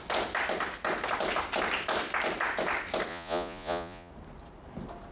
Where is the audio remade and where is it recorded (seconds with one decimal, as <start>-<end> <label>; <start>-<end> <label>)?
0.0-3.1 recorded; 3.1-4.1 remade; 4.1-5.1 recorded